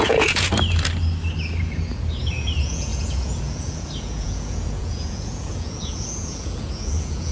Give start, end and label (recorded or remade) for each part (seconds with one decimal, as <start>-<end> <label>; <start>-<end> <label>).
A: 0.0-0.5 remade; 0.5-2.2 recorded; 2.2-7.3 remade